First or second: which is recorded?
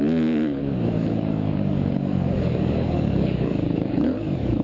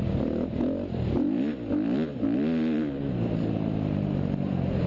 second